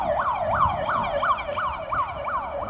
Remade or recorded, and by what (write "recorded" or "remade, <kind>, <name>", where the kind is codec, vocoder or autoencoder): recorded